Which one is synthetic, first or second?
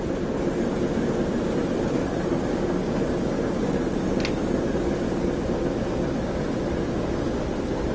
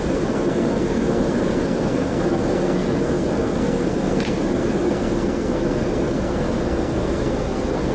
second